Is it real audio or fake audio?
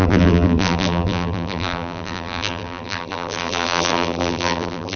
fake